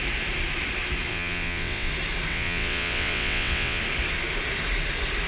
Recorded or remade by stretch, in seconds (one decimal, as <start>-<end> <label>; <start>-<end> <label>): 0.0-1.1 recorded; 1.1-1.9 remade; 1.9-2.3 recorded; 2.3-3.8 remade; 3.8-5.3 recorded

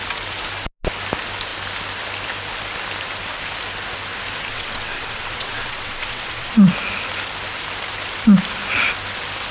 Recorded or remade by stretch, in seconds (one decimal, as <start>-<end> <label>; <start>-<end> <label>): 0.0-4.5 recorded; 4.5-6.5 remade; 6.5-9.5 recorded

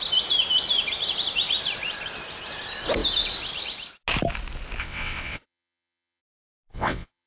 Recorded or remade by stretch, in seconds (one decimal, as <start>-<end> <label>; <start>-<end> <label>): 0.0-4.8 recorded; 4.8-6.2 remade; 6.2-6.7 recorded; 6.7-7.3 remade

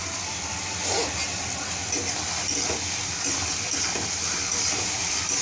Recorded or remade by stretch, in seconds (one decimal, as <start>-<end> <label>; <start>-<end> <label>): 0.0-5.4 recorded

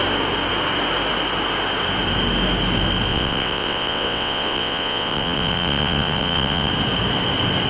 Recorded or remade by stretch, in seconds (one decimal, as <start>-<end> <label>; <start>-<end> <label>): 0.0-3.1 recorded; 3.1-6.7 remade; 6.7-7.7 recorded

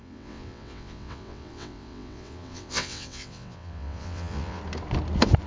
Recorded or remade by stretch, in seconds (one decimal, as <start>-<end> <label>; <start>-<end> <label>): 0.0-4.6 remade; 4.6-5.5 recorded

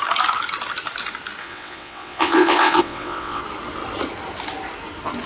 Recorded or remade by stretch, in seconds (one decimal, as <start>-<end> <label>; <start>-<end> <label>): 0.0-1.4 recorded; 1.4-3.4 remade; 3.4-5.3 recorded

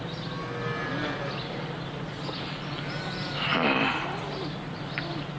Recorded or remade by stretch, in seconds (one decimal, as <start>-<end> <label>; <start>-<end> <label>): 0.0-5.4 recorded